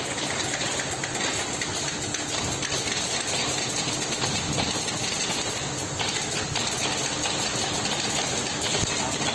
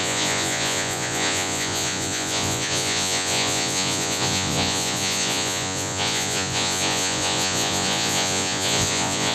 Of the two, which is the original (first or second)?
first